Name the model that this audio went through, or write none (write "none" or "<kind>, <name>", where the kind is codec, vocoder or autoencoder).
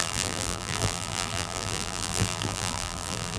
vocoder, BigVGAN v2